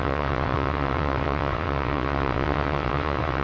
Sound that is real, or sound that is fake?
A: fake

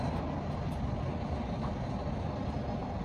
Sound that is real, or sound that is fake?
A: real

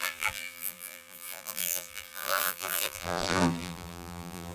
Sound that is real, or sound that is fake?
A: fake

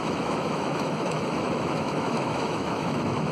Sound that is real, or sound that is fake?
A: fake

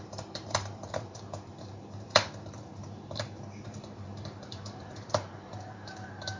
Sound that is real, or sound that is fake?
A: fake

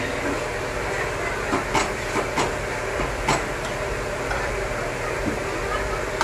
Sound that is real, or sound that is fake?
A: real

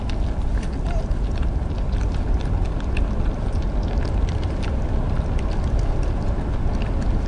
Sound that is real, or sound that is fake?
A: real